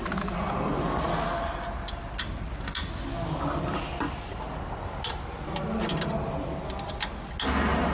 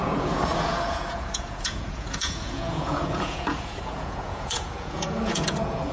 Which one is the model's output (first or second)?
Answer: second